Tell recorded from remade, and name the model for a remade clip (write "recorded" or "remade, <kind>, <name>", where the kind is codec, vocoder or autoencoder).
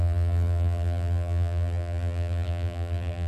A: remade, vocoder, BigVGAN v2